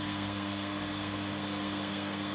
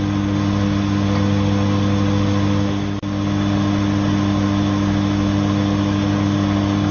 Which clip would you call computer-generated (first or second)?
first